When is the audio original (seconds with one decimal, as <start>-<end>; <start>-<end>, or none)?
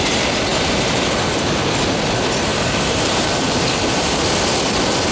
0.0-2.5; 4.4-5.1